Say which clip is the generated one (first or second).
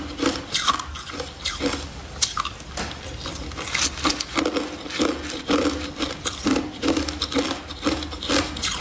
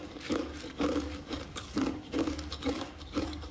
second